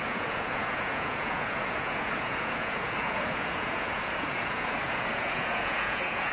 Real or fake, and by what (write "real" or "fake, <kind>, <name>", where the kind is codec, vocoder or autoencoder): fake, vocoder, Vocos